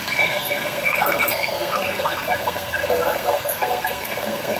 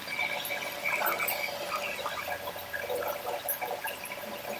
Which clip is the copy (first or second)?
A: first